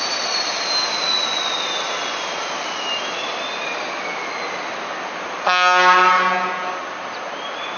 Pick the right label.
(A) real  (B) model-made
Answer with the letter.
A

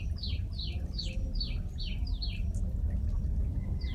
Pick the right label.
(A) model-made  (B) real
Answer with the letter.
B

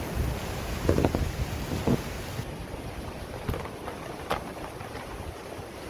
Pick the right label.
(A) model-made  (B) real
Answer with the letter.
B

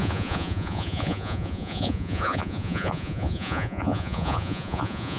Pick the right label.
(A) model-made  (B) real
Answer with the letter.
A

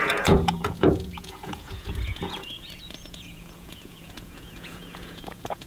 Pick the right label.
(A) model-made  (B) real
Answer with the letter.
A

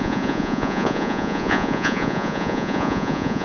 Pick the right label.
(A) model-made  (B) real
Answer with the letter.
A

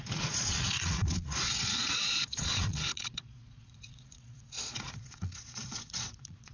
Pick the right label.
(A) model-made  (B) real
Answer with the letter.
A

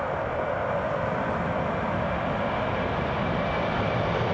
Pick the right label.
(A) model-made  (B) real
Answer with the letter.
B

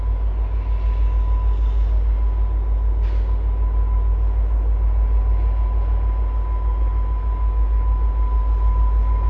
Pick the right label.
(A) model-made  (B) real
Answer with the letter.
B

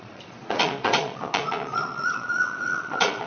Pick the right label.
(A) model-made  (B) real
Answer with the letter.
A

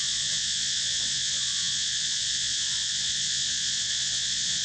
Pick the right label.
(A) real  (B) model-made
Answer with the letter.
B